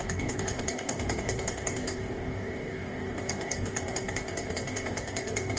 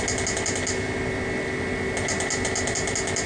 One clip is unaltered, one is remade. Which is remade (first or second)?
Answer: first